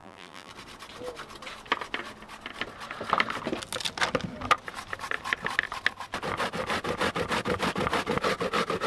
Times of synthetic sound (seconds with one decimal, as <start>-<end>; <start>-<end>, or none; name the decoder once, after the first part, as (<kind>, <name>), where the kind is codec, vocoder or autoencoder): 0.0-0.5 (vocoder, BigVGAN v2)